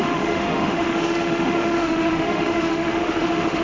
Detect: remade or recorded remade